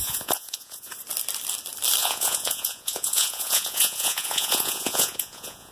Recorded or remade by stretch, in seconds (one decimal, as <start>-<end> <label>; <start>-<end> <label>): 0.0-0.9 remade; 0.9-2.0 recorded; 2.0-5.7 remade